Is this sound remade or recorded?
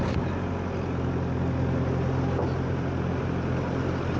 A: recorded